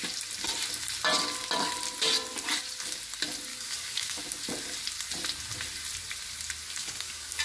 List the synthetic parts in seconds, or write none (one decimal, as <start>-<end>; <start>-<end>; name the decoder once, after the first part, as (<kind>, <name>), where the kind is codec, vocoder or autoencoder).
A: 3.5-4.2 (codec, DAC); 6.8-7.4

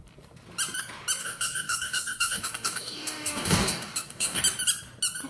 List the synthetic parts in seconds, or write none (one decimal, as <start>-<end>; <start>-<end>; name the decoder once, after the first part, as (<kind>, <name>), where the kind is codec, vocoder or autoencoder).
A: 1.2-4.4 (codec, DAC)

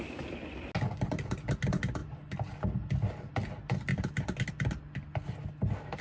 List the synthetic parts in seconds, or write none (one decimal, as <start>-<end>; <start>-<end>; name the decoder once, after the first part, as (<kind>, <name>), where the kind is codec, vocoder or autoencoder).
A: none